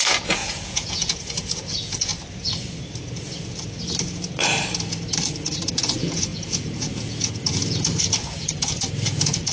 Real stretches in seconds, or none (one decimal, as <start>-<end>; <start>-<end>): 2.1-5.7